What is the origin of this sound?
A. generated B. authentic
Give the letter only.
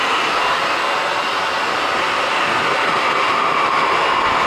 B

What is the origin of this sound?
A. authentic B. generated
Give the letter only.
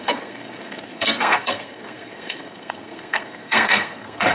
B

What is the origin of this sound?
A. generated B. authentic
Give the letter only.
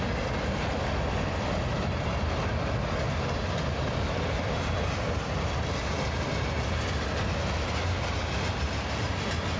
B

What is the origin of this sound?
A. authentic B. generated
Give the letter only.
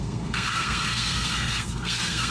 B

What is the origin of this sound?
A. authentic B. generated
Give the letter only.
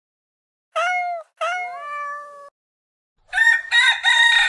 A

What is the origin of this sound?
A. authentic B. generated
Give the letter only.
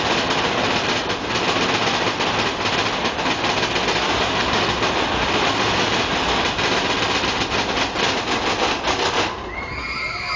A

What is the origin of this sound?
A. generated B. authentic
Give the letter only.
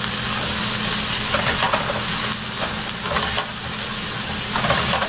B